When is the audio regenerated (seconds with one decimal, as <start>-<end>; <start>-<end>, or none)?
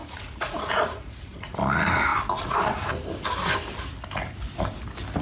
0.0-1.5